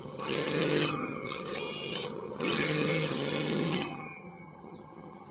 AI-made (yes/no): yes